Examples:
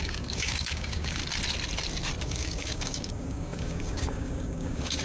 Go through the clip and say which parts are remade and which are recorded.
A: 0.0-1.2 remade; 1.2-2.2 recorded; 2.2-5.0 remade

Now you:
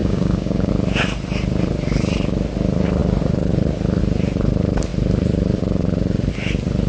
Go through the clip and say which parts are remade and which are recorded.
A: 0.0-0.7 remade; 0.7-6.9 recorded

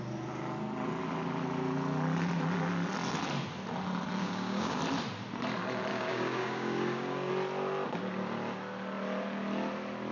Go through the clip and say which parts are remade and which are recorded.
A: 0.0-4.2 recorded; 4.2-4.8 remade; 4.8-5.9 recorded; 5.9-7.3 remade; 7.3-10.1 recorded

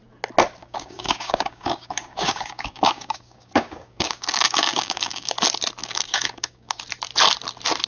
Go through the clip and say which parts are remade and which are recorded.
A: 0.0-0.6 recorded; 0.6-5.3 remade; 5.3-5.8 recorded; 5.8-6.8 remade; 6.8-7.9 recorded